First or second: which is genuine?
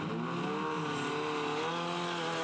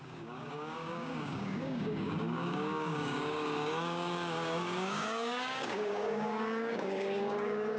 first